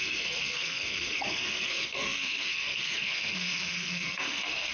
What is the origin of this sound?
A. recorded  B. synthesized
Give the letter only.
B